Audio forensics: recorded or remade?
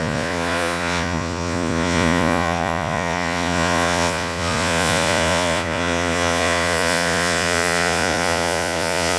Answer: remade